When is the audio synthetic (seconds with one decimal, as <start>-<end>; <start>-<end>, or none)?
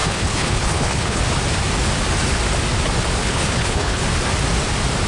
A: 0.0-1.2; 3.2-4.0